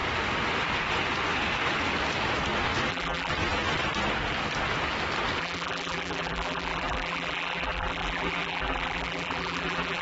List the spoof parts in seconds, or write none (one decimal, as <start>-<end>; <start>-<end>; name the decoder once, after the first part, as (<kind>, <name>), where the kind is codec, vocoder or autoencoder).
2.9-3.3 (vocoder, BigVGAN v2); 5.4-10.0